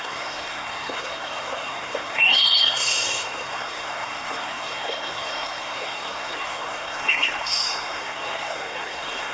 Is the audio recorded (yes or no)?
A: no